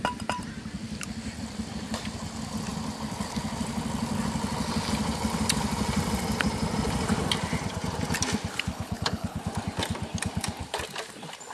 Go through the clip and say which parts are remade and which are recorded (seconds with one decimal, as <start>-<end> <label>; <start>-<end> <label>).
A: 0.0-8.7 recorded; 8.7-9.4 remade; 9.4-11.5 recorded